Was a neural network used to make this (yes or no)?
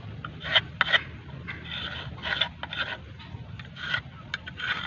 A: no